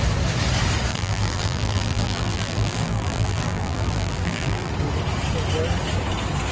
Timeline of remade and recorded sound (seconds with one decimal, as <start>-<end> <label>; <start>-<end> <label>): 0.0-0.9 recorded; 0.9-4.7 remade; 4.7-6.5 recorded